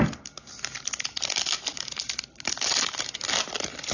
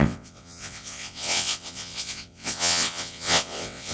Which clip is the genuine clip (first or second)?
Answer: first